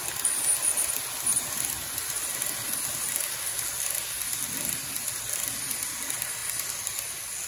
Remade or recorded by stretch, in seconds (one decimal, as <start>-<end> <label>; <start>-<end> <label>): 0.0-7.5 recorded